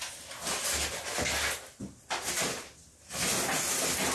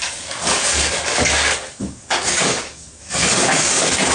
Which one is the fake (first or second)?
second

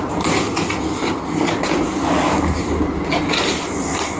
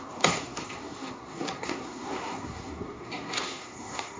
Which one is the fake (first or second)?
second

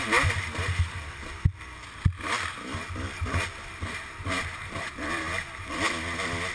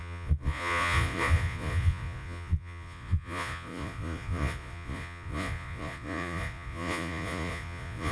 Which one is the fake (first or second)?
second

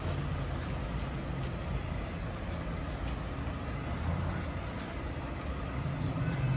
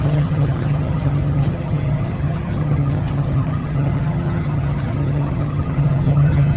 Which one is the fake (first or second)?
second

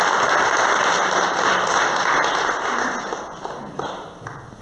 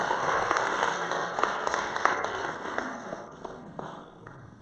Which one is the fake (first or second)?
second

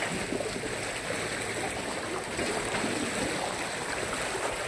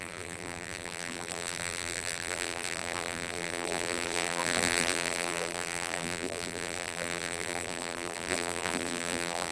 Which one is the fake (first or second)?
second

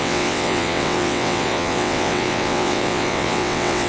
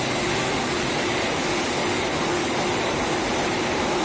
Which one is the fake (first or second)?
first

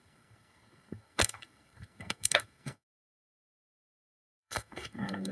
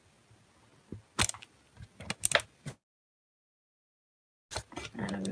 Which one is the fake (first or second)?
first